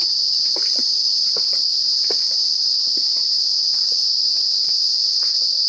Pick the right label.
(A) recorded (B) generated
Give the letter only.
B